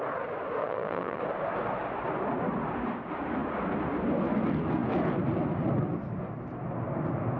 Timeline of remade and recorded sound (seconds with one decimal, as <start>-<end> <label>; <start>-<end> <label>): 0.0-0.6 recorded; 0.6-1.2 remade; 1.2-7.4 recorded